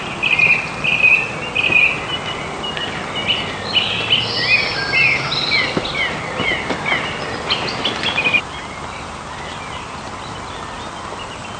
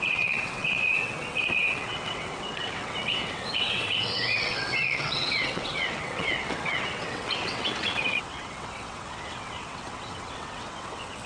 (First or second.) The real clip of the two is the first